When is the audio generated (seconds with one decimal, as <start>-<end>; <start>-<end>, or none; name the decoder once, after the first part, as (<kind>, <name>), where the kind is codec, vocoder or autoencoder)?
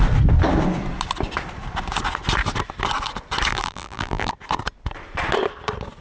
3.5-4.3 (vocoder, BigVGAN v2)